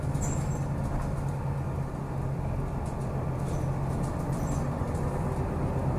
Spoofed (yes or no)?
no